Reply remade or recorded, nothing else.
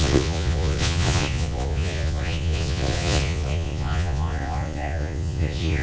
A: remade